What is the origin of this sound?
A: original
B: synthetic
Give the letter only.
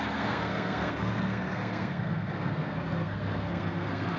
B